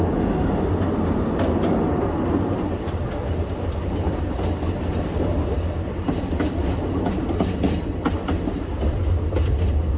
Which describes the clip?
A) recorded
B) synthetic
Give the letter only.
A